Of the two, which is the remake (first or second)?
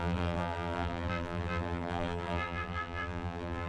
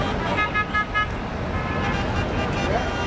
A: first